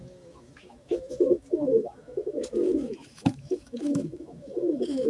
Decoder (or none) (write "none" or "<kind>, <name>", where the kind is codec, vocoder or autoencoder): autoencoder, DAC-VAE